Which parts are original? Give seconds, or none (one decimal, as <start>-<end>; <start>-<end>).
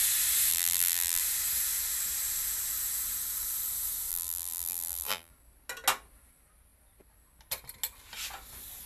0.0-0.5; 1.2-4.1; 5.3-8.9